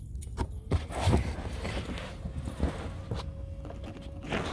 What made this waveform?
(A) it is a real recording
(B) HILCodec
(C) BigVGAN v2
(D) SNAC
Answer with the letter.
A